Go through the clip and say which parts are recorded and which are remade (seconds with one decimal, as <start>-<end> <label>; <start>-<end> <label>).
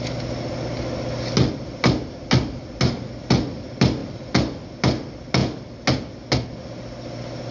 0.0-7.5 recorded